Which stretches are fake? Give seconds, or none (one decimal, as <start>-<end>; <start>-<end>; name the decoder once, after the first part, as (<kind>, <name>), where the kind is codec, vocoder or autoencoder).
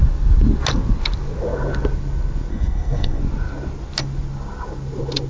2.5-3.2 (codec, SNAC)